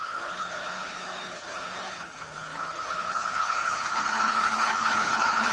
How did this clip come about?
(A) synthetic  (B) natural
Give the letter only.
A